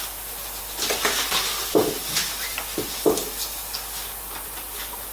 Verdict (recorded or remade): recorded